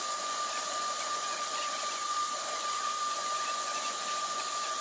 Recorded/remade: remade